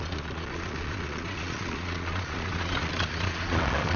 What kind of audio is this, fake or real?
fake